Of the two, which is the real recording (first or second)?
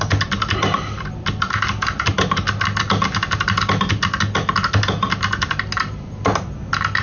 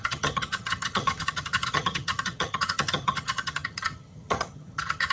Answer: first